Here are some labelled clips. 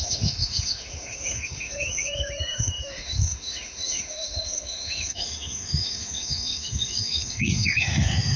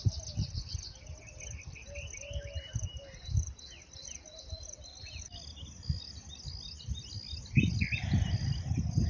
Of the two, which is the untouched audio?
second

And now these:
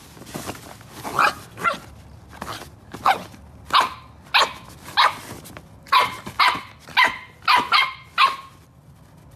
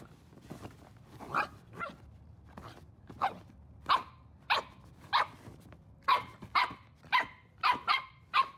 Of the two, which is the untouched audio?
first